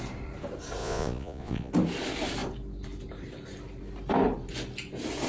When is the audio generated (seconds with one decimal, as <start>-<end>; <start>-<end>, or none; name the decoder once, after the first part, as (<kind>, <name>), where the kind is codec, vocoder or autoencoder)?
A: 0.8-1.7 (vocoder, Vocos)